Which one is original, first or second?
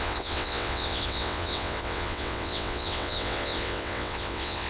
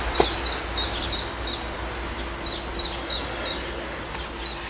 second